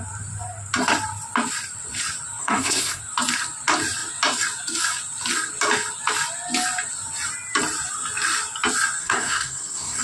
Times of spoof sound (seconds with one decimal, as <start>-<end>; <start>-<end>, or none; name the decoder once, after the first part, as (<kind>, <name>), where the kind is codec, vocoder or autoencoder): 2.4-3.0 (codec, SNAC); 9.0-10.0